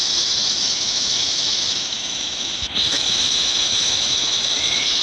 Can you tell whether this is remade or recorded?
remade